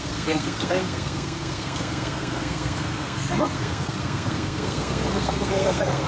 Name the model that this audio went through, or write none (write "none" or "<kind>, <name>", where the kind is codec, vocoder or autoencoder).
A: codec, SNAC